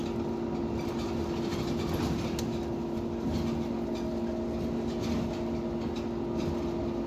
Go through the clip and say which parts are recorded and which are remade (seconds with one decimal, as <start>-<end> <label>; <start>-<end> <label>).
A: 0.0-7.1 recorded